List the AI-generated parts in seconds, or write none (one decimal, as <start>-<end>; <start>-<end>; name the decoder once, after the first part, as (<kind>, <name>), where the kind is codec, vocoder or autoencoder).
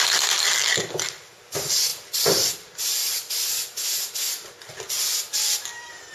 1.9-3.5 (vocoder, BigVGAN v2); 5.3-6.1